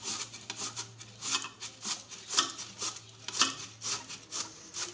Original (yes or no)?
yes